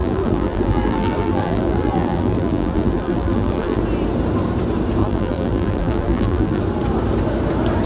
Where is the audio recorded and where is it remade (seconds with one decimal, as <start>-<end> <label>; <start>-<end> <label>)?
0.0-3.8 remade; 3.8-5.0 recorded; 5.0-6.6 remade; 6.6-7.9 recorded